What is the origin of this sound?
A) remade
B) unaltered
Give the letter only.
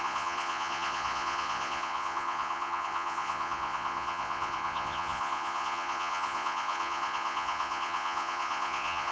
A